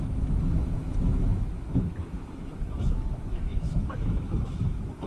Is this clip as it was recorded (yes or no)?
no